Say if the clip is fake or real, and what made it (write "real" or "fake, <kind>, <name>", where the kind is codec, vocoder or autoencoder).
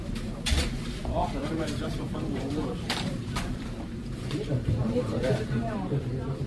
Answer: fake, vocoder, BigVGAN v2